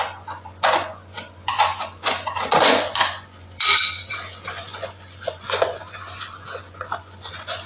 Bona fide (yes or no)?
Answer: no